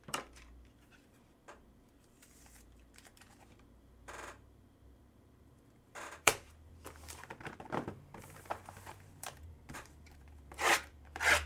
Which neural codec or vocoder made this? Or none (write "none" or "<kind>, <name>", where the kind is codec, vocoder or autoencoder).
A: vocoder, BigVGAN v2